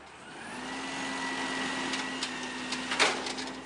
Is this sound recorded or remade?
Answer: recorded